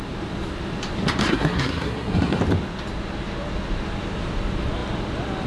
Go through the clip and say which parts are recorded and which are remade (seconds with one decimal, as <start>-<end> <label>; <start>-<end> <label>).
0.0-1.2 recorded; 1.2-2.4 remade; 2.4-5.5 recorded